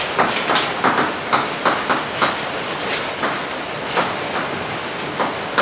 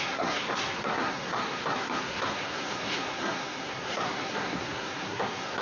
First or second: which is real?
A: first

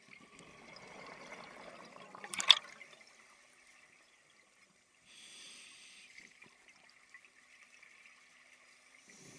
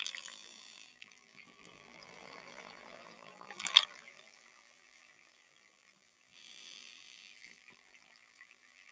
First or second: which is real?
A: first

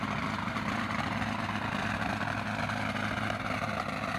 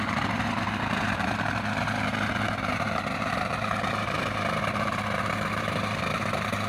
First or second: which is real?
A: first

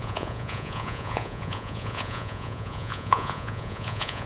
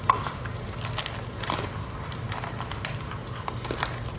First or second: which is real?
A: second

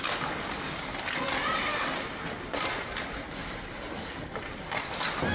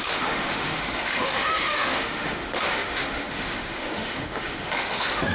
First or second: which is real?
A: first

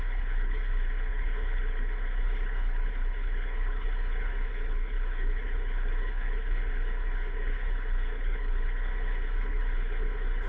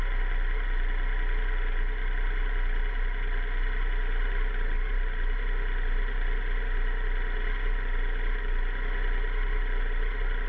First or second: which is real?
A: second